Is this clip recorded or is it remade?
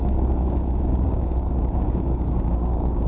remade